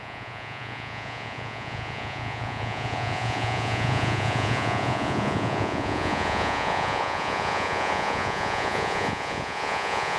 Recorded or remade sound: remade